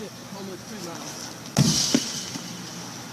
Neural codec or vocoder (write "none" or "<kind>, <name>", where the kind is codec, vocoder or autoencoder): none